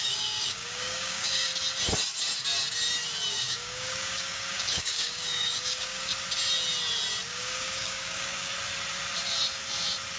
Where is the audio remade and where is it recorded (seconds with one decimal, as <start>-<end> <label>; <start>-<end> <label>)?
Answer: 0.0-1.5 remade; 1.5-3.3 recorded; 3.3-6.1 remade; 6.1-7.3 recorded; 7.3-8.5 remade; 8.5-10.2 recorded